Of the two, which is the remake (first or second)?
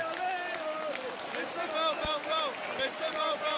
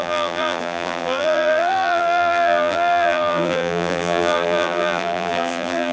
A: second